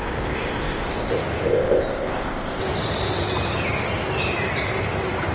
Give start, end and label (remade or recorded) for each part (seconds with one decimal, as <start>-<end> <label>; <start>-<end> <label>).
0.0-1.1 remade; 1.1-1.5 recorded; 1.5-2.6 remade; 2.6-5.3 recorded